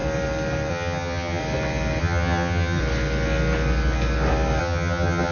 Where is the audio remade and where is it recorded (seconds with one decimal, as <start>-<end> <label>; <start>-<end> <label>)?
0.0-0.7 recorded; 0.7-1.4 remade; 1.4-2.0 recorded; 2.0-2.8 remade; 2.8-4.6 recorded; 4.6-5.3 remade